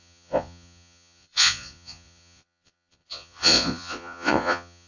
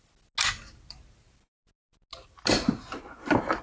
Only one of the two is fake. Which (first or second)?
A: first